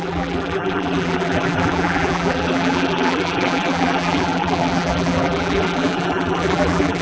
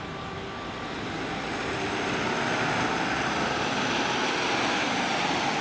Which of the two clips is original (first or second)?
second